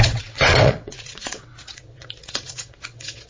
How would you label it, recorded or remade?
remade